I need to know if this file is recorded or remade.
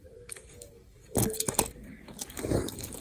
remade